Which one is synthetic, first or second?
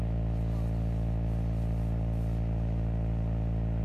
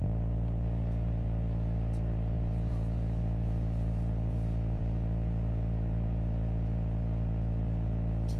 second